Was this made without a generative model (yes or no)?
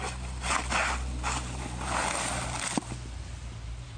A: yes